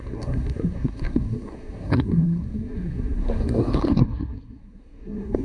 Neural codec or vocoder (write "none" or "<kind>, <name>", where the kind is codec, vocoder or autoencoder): codec, SNAC